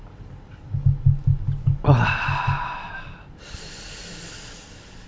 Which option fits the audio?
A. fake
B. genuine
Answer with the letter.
B